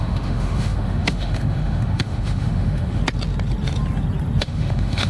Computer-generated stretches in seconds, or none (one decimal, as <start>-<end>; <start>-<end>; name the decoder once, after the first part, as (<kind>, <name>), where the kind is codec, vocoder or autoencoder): 0.0-3.0 (autoencoder, DAC-VAE); 4.4-5.1